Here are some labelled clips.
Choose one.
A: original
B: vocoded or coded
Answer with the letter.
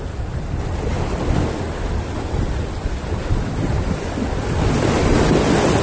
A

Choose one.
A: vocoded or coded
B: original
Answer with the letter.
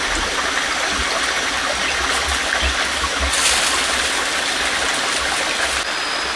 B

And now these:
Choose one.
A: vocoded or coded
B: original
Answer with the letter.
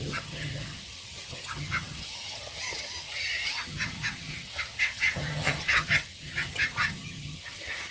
A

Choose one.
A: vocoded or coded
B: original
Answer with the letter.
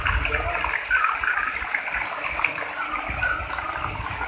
B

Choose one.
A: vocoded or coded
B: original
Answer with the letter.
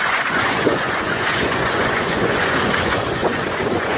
A